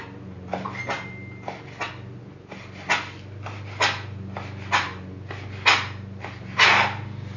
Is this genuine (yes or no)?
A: yes